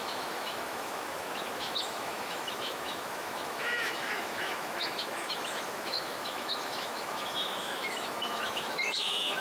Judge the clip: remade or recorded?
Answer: remade